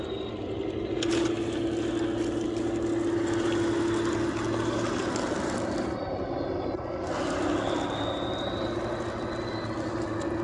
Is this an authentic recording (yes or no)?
yes